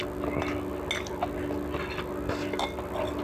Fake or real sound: real